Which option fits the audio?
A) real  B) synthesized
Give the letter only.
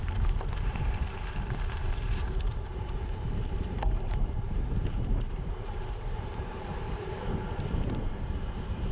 B